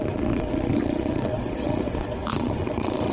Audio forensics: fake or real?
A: fake